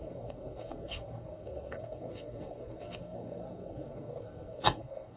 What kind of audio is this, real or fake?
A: fake